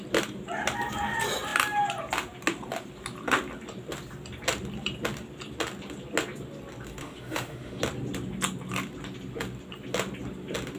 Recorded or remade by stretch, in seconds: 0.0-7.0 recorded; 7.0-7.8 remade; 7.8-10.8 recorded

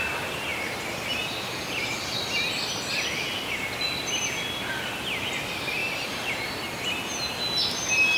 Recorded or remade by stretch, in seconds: 0.0-0.5 recorded; 0.5-2.3 remade; 2.3-5.8 recorded; 5.8-6.5 remade; 6.5-8.2 recorded

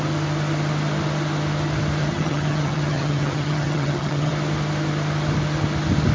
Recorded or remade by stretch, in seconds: 0.0-2.0 recorded; 2.0-4.3 remade; 4.3-6.1 recorded

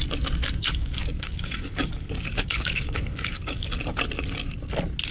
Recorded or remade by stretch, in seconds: 0.0-0.6 recorded; 0.6-3.7 remade; 3.7-5.1 recorded

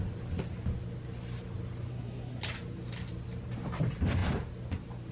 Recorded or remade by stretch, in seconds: 0.0-1.9 recorded; 1.9-2.4 remade; 2.4-5.1 recorded

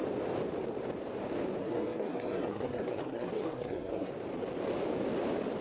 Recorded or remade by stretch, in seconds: 0.0-1.6 recorded; 1.6-4.1 remade; 4.1-5.6 recorded